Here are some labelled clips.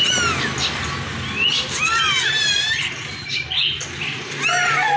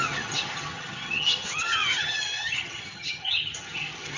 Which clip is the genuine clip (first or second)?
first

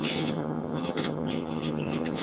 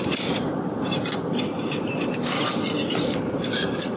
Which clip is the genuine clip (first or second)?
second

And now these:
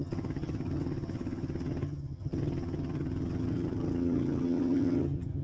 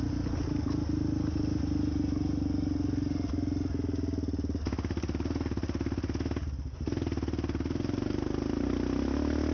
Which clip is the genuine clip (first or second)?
second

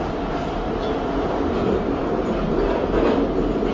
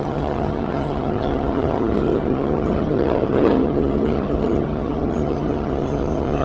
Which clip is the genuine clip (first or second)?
first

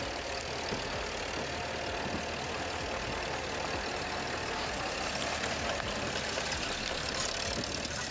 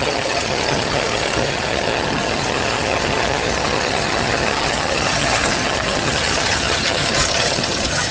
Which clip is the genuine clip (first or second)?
first